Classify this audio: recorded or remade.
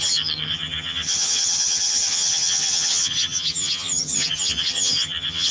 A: remade